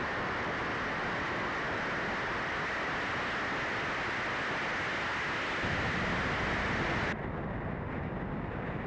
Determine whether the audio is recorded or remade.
recorded